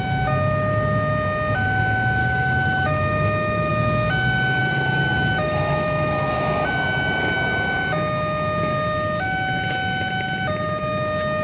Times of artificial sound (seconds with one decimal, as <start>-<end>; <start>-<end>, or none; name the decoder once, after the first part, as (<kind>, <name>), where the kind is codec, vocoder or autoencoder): 2.2-3.7 (autoencoder, DAC-VAE); 4.6-6.3